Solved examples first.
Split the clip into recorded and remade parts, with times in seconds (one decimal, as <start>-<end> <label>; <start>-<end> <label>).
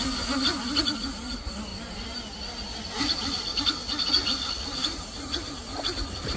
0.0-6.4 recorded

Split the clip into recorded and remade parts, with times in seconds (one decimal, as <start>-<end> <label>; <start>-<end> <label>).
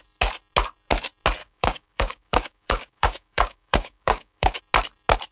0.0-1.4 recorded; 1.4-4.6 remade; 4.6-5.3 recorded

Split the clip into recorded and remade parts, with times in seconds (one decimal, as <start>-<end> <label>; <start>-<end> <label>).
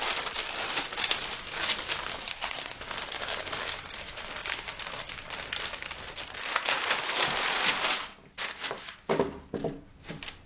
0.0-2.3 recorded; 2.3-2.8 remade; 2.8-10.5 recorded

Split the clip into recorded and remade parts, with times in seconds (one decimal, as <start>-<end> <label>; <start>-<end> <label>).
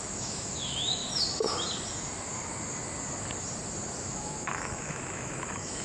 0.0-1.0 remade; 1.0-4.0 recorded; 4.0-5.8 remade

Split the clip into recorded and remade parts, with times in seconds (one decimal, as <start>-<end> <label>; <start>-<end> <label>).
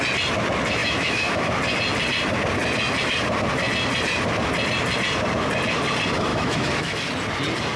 0.0-0.8 recorded; 0.8-1.5 remade; 1.5-6.3 recorded; 6.3-7.0 remade; 7.0-7.8 recorded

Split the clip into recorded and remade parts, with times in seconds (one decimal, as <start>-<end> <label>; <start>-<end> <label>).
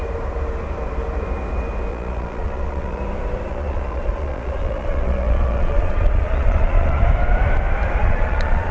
0.0-1.9 recorded; 1.9-3.0 remade; 3.0-3.5 recorded; 3.5-7.0 remade; 7.0-8.0 recorded; 8.0-8.7 remade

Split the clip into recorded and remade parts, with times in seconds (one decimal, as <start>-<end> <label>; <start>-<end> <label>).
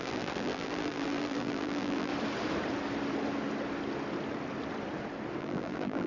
0.0-2.1 remade; 2.1-5.4 recorded; 5.4-6.1 remade